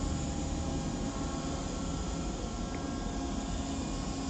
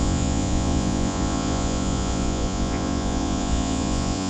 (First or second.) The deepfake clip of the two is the second